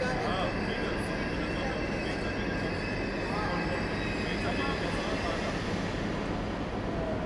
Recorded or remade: recorded